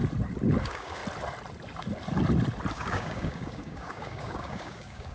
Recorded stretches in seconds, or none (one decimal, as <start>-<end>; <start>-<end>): 0.0-0.6; 1.0-2.7